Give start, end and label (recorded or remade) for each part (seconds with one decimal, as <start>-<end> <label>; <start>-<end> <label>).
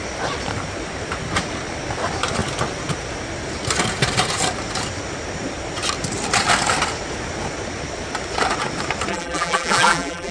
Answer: 0.0-9.1 recorded; 9.1-10.3 remade